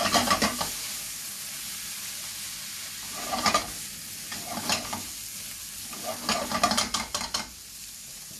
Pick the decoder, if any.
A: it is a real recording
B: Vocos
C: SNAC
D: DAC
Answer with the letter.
A